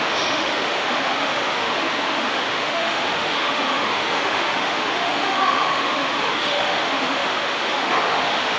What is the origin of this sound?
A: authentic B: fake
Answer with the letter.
B